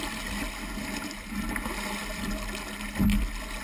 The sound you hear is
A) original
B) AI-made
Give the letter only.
A